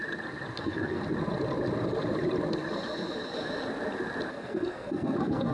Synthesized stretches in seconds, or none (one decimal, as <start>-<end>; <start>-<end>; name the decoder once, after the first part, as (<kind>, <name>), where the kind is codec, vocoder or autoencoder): 0.6-1.0 (codec, SNAC); 4.3-5.5